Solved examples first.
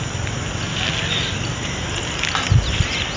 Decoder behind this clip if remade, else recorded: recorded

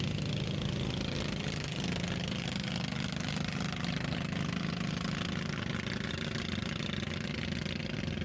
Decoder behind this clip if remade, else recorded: recorded